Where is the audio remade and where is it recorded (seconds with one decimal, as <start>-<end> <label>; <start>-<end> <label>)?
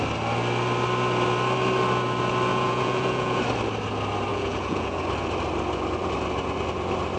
0.0-2.5 recorded; 2.5-3.4 remade; 3.4-4.3 recorded; 4.3-5.0 remade; 5.0-7.2 recorded